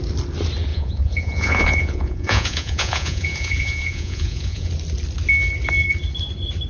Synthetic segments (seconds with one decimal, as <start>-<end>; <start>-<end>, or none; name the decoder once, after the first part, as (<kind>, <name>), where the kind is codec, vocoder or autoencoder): 0.7-4.7 (vocoder, Vocos)